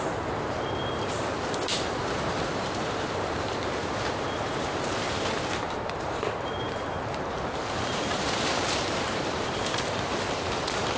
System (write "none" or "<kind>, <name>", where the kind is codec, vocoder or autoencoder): vocoder, BigVGAN v2